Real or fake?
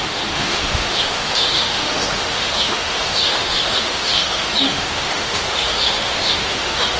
fake